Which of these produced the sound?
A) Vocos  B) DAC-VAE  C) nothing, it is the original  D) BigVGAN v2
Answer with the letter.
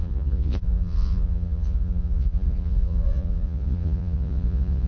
A